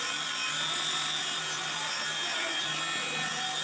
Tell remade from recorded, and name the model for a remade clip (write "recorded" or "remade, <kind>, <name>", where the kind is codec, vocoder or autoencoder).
recorded